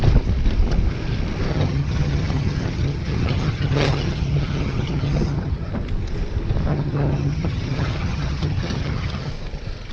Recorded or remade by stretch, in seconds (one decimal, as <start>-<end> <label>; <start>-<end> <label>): 0.0-1.5 recorded; 1.5-5.7 remade; 5.7-6.7 recorded; 6.7-9.3 remade; 9.3-9.9 recorded